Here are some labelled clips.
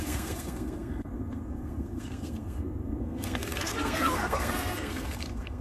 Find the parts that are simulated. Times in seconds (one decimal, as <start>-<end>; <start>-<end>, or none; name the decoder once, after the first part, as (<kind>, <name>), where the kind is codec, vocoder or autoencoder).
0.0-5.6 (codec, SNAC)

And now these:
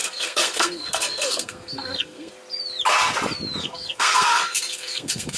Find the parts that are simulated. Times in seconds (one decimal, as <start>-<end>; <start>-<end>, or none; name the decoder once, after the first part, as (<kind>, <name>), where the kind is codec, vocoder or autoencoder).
0.0-2.3 (codec, SNAC); 3.6-5.4

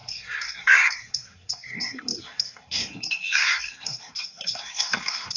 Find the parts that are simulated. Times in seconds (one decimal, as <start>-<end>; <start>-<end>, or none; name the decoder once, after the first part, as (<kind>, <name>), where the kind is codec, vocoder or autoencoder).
0.0-5.4 (codec, SNAC)

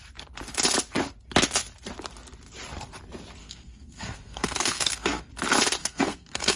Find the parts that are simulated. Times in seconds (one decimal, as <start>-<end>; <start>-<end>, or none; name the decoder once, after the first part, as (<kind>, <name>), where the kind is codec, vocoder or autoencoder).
3.4-5.3 (codec, SNAC); 5.8-6.6